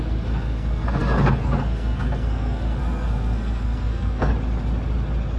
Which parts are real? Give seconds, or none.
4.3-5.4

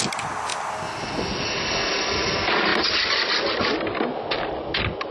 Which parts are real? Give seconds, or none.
0.0-5.1

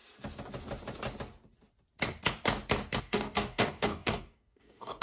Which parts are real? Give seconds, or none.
0.0-3.0

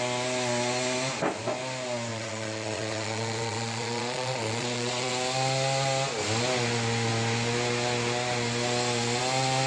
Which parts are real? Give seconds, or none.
0.0-2.1; 5.1-9.7

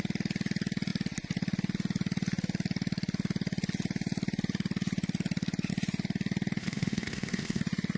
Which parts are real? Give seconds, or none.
0.0-6.6; 7.6-8.0